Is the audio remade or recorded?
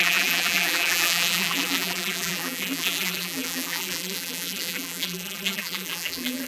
remade